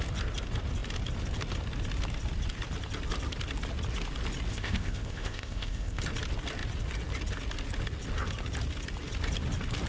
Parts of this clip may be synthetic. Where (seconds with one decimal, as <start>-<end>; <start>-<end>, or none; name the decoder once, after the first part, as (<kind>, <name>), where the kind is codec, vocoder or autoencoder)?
4.5-6.0 (codec, ZipCodec)